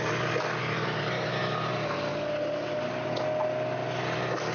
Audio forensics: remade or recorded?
recorded